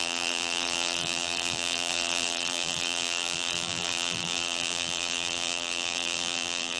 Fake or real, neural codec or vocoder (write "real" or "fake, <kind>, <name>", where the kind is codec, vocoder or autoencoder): fake, vocoder, BigVGAN v2